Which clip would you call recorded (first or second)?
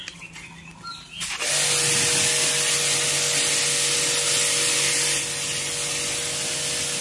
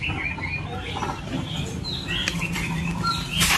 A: first